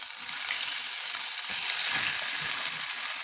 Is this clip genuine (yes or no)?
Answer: yes